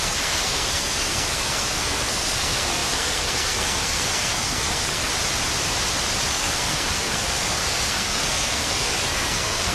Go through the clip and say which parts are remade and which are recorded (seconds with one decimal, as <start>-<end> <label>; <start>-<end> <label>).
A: 0.0-5.1 remade; 5.1-6.3 recorded; 6.3-9.7 remade